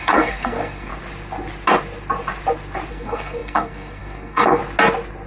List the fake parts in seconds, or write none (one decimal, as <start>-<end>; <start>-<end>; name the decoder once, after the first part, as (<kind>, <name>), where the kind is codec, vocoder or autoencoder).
0.0-0.9 (codec, SNAC); 2.9-4.6